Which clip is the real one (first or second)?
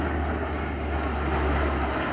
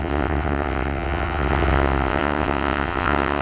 first